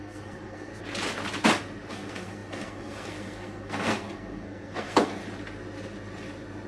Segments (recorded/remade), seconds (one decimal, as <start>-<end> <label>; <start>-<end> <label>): 0.0-0.7 remade; 0.7-1.9 recorded; 1.9-5.2 remade; 5.2-6.7 recorded